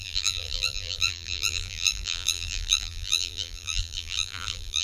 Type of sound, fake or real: fake